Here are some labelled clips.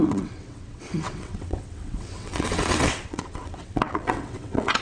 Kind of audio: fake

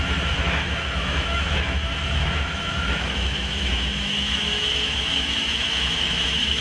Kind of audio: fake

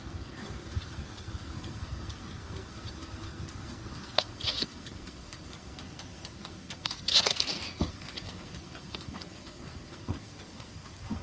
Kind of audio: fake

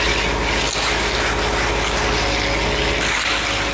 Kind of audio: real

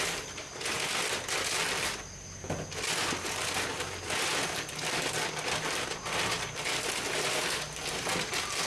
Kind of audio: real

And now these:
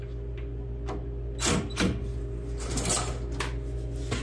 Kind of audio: real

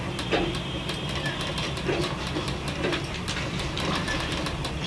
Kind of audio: real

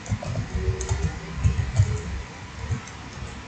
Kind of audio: real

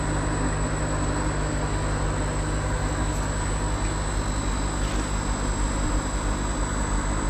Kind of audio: real